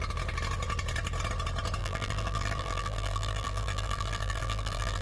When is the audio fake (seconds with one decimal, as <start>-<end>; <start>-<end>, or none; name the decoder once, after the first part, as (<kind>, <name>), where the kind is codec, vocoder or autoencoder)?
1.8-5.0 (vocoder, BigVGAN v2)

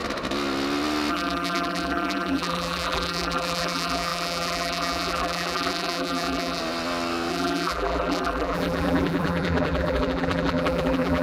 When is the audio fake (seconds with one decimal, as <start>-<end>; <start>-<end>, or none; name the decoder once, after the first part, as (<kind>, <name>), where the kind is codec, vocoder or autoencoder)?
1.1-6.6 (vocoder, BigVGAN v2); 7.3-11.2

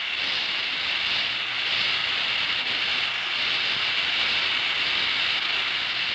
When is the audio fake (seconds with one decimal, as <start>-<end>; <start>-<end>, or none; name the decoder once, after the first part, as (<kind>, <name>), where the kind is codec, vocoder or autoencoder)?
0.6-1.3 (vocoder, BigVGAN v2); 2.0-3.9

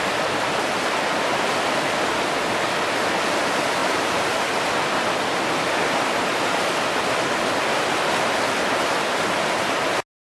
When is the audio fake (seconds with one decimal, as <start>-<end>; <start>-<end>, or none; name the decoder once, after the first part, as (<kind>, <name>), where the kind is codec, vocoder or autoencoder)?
3.8-4.5 (vocoder, BigVGAN v2)

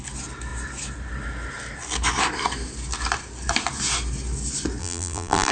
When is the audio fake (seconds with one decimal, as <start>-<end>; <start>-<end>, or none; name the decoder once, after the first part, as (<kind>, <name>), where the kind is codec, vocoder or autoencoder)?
4.8-5.5 (vocoder, BigVGAN v2)

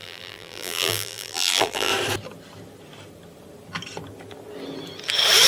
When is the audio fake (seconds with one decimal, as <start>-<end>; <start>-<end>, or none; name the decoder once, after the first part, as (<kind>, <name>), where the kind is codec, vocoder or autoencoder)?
0.0-1.9 (vocoder, BigVGAN v2)